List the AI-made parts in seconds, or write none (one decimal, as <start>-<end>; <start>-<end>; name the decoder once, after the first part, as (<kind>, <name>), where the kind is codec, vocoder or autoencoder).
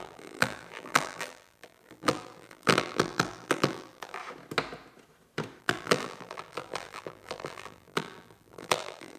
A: 0.0-4.2 (vocoder, BigVGAN v2); 5.6-9.2